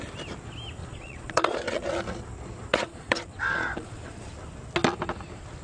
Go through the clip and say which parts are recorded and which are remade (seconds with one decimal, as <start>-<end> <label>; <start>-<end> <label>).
0.0-0.8 recorded; 0.8-1.8 remade; 1.8-2.7 recorded; 2.7-4.3 remade; 4.3-5.6 recorded